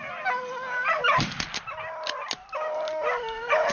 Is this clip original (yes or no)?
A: yes